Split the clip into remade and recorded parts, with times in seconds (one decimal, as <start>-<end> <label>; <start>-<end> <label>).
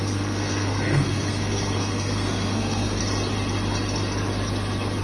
0.0-3.0 remade; 3.0-5.0 recorded